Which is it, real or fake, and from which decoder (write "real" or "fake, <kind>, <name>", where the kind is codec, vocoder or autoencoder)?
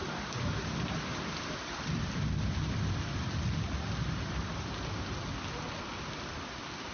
real